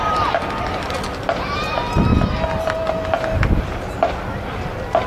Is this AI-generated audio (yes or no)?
no